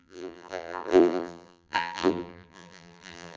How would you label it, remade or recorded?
remade